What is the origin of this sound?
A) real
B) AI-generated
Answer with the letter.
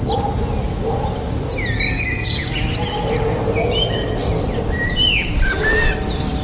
A